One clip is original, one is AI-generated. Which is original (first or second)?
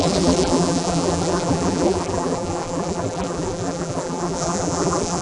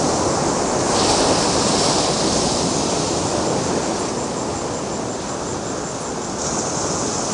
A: second